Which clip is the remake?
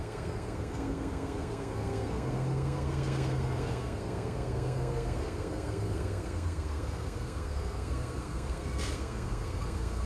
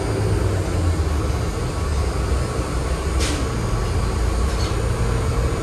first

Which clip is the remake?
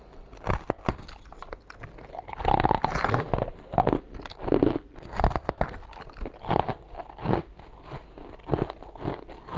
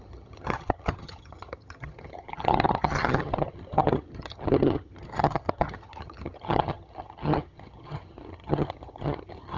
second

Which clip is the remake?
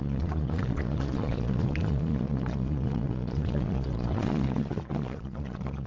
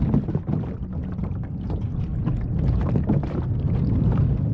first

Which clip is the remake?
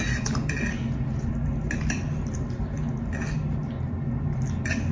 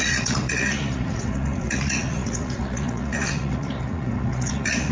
second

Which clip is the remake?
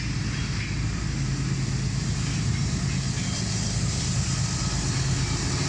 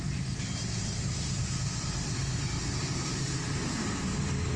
second